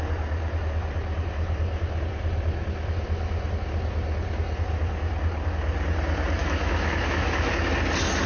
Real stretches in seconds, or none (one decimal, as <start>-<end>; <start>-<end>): 0.0-6.4; 7.5-8.3